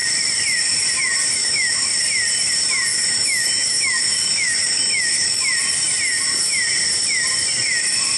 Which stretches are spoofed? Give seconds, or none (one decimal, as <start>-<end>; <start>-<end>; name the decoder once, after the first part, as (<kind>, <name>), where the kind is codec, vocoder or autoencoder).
1.4-1.9 (autoencoder, DAC-VAE); 2.9-5.4